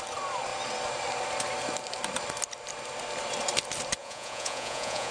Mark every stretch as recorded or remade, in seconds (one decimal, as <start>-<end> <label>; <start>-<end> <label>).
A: 0.0-4.0 recorded; 4.0-5.1 remade